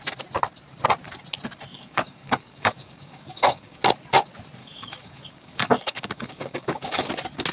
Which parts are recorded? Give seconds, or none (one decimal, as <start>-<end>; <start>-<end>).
0.0-1.7; 3.8-4.6; 7.1-7.5